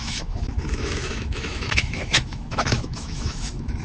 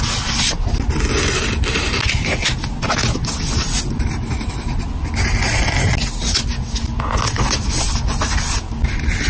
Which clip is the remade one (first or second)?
first